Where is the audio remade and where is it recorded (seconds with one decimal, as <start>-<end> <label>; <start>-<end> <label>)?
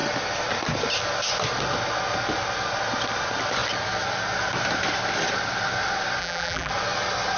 0.0-6.2 recorded; 6.2-6.7 remade; 6.7-7.4 recorded